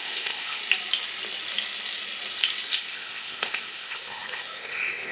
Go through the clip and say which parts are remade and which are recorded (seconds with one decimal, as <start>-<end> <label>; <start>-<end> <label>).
0.0-0.6 remade; 0.6-2.7 recorded; 2.7-5.1 remade